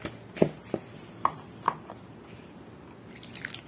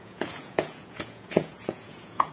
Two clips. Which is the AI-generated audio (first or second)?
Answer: second